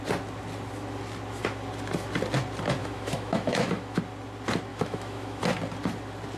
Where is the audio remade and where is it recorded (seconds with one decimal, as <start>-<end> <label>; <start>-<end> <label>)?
0.0-2.8 recorded; 2.8-4.0 remade; 4.0-4.7 recorded; 4.7-5.4 remade; 5.4-6.4 recorded